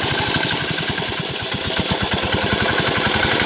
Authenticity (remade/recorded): recorded